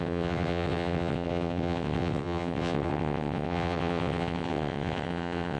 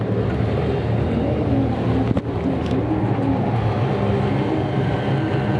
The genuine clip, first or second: second